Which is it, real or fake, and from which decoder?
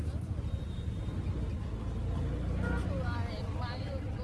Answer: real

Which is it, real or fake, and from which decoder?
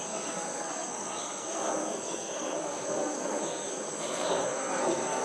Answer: fake, codec, SNAC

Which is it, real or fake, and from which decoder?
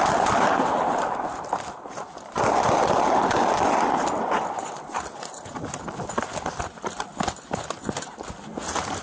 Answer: real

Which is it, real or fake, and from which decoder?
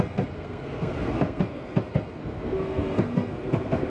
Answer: fake, codec, SNAC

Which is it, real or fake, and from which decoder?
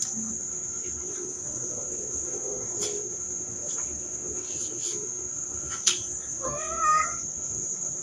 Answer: fake, codec, SNAC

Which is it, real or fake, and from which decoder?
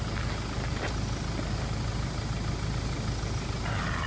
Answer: real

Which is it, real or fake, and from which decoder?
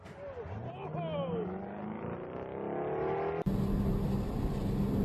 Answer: real